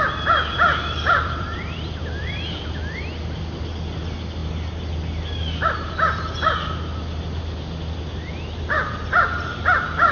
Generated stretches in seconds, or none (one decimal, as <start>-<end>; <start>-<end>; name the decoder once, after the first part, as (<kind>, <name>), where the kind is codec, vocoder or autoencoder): 0.5-3.0 (vocoder, BigVGAN v2)